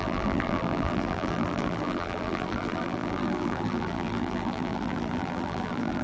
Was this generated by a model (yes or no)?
yes